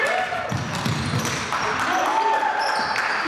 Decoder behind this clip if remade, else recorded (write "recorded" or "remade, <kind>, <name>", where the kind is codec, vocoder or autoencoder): recorded